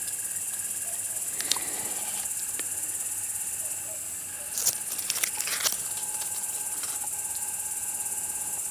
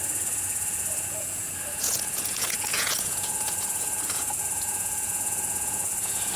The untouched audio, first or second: first